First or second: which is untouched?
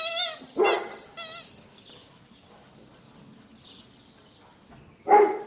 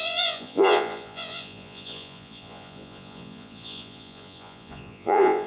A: first